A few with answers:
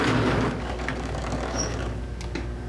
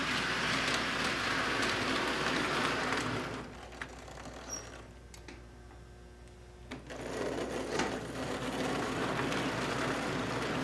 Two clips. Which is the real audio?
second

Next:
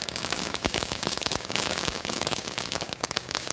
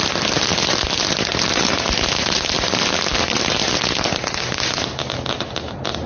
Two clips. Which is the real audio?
second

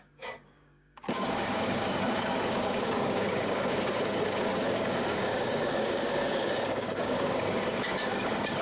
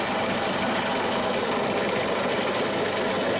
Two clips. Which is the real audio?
second